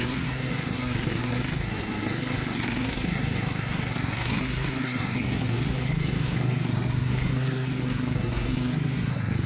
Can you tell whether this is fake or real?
fake